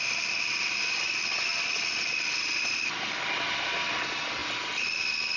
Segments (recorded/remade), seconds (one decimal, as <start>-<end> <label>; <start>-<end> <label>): 0.0-5.4 recorded